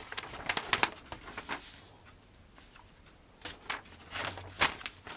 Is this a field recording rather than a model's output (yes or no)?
yes